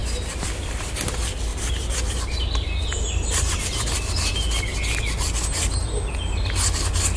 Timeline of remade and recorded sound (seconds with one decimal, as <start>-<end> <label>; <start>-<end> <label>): 0.0-0.8 remade; 0.8-1.5 recorded; 1.5-2.4 remade; 2.4-7.2 recorded